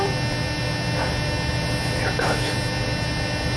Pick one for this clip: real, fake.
real